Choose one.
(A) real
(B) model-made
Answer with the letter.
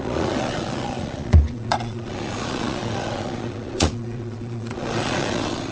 B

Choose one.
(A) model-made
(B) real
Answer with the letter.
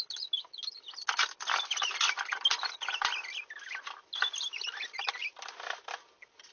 B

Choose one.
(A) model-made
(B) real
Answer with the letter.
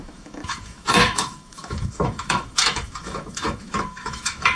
A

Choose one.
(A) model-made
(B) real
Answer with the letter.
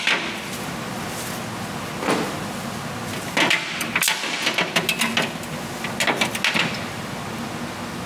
B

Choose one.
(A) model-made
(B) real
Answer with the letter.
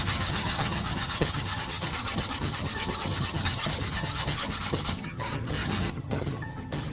A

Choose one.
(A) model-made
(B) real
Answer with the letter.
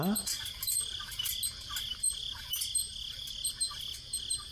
B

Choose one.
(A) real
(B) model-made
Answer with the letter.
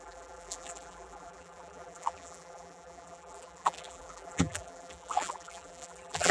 B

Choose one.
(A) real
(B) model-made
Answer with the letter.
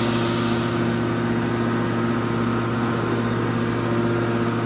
A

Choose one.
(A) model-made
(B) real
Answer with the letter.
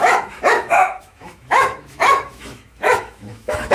A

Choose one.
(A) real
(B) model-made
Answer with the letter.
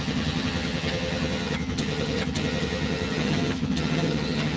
B